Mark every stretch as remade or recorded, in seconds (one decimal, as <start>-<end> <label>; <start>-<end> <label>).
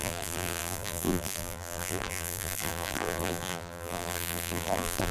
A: 0.0-5.1 remade